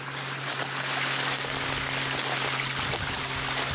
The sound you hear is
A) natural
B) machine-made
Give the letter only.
A